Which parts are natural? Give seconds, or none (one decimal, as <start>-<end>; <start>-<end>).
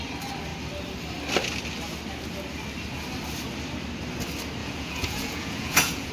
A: 0.0-4.6